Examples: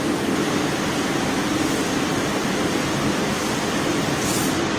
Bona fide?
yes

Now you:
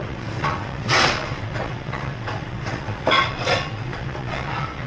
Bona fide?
no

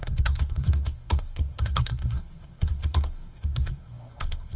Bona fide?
no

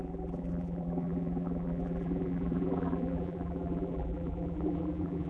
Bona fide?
no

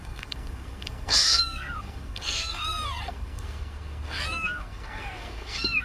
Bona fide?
no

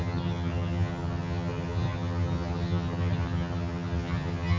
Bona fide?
no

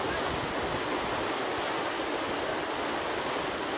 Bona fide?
yes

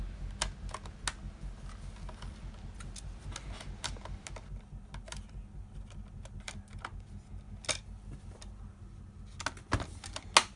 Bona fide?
yes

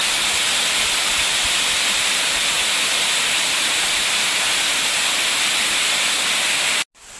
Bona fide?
yes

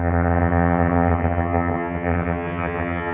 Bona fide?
no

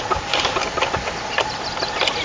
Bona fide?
no